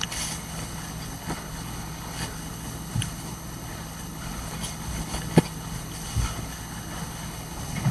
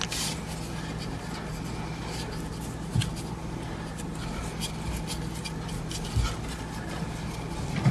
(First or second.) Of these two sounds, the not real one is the first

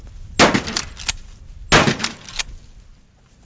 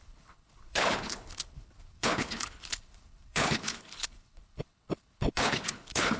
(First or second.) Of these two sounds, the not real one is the second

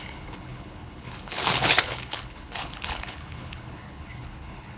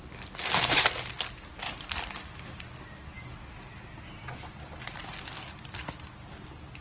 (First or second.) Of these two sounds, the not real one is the first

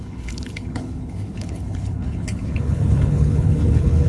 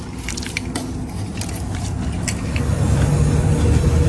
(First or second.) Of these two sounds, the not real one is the first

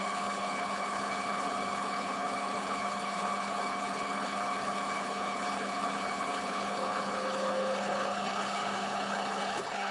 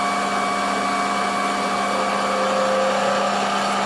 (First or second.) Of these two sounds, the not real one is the first